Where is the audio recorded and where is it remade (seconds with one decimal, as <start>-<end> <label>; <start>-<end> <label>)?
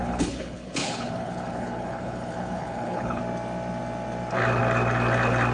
0.0-3.2 remade; 3.2-5.5 recorded